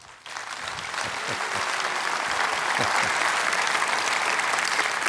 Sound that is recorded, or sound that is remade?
remade